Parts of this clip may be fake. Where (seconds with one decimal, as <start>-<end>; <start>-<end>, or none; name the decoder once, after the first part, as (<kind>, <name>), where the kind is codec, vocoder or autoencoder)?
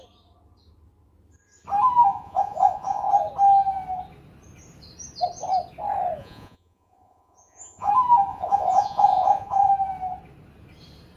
2.1-3.1 (vocoder, Vocos); 6.2-7.9; 8.3-9.7